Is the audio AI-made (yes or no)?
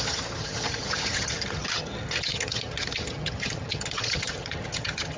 yes